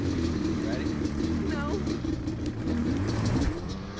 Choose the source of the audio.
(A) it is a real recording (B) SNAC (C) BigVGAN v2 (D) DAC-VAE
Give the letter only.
C